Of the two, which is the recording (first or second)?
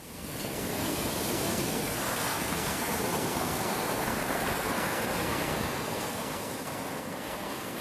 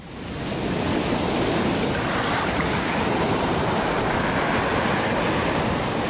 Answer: second